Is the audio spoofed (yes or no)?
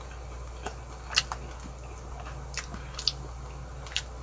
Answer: no